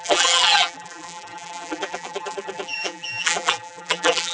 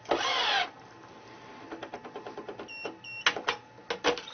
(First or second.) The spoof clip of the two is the first